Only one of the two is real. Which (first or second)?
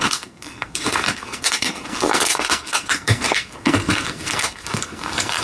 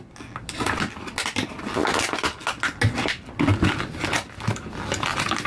second